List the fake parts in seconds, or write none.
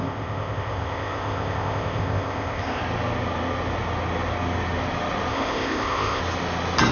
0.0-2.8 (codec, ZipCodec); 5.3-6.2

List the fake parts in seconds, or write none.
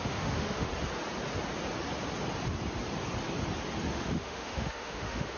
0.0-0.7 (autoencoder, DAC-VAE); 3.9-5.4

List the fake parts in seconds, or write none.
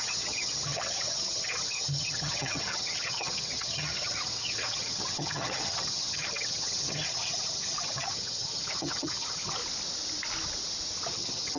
0.0-9.6 (vocoder, HiFi-GAN); 11.1-11.6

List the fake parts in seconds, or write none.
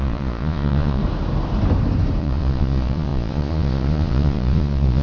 0.0-1.0 (vocoder, Vocos); 2.2-5.0